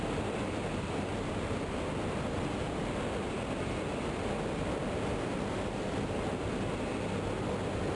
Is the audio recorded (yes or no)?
yes